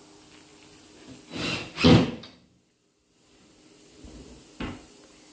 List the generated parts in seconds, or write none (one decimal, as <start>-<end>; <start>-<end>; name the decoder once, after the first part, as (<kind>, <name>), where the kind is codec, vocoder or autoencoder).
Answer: none